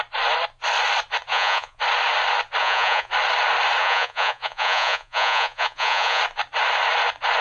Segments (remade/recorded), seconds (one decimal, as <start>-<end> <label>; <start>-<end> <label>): 0.0-1.3 recorded; 1.3-1.8 remade; 1.8-2.6 recorded; 2.6-3.1 remade; 3.1-3.8 recorded; 3.8-6.2 remade; 6.2-7.4 recorded